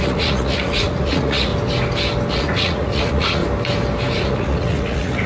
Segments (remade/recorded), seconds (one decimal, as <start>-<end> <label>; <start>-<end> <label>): 0.0-1.5 remade; 1.5-2.3 recorded; 2.3-3.4 remade; 3.4-4.1 recorded; 4.1-5.3 remade